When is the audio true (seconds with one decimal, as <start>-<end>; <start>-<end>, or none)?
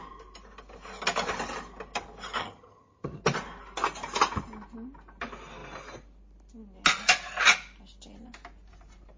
0.0-2.4; 3.2-9.2